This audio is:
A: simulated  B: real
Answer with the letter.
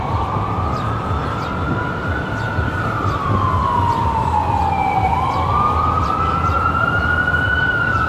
B